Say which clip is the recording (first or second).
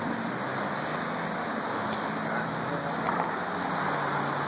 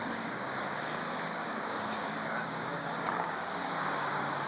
first